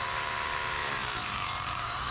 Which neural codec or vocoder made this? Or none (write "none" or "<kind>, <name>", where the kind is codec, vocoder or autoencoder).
vocoder, BigVGAN v2